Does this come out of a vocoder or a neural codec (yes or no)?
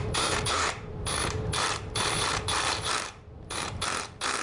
yes